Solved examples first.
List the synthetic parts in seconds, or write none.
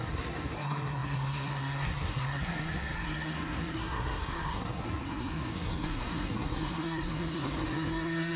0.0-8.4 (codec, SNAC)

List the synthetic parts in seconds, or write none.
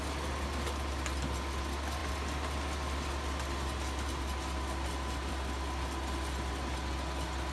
none